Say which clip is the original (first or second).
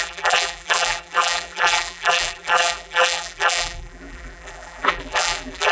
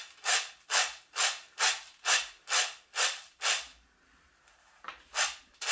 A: second